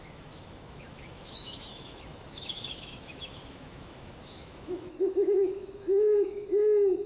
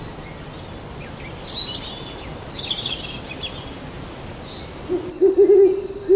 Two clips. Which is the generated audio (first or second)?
first